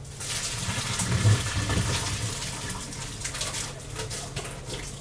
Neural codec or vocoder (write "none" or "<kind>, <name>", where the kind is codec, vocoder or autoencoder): none